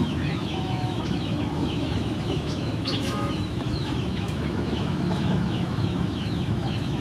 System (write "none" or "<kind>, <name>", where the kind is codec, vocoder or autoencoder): autoencoder, DAC-VAE